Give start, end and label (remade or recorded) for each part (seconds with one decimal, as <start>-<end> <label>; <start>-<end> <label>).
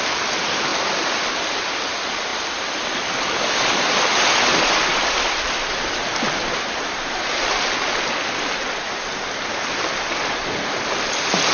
0.0-0.7 recorded; 0.7-1.3 remade; 1.3-11.5 recorded